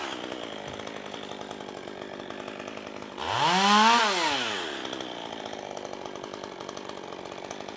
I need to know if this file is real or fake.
real